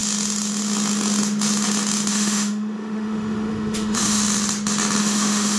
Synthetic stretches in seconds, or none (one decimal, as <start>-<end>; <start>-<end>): 2.1-4.2; 5.0-5.6